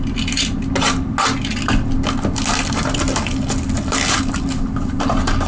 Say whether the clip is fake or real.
real